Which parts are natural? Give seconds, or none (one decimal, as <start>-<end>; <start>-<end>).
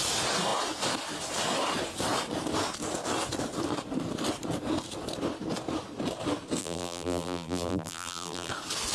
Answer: 0.0-6.6; 8.5-8.9